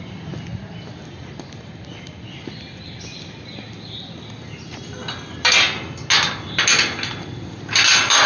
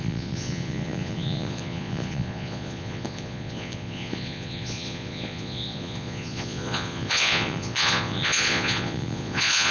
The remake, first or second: second